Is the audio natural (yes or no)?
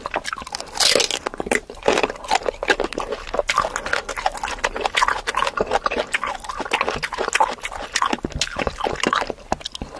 yes